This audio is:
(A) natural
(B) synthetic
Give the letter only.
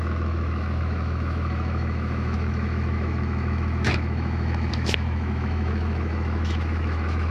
B